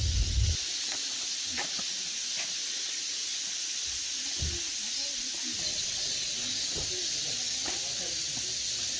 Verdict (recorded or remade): recorded